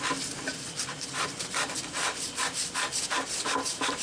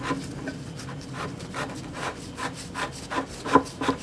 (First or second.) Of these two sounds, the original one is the second